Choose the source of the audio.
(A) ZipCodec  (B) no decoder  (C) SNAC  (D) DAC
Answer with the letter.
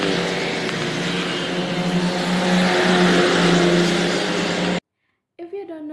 B